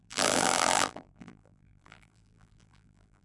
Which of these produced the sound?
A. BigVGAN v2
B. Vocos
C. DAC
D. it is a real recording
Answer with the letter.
A